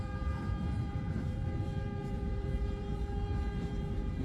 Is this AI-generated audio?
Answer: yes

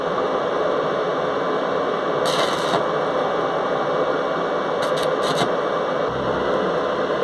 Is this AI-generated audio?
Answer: no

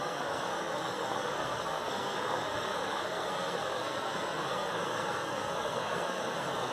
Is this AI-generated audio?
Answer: yes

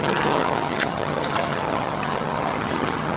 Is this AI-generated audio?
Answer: yes